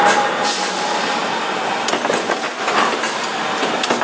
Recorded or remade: recorded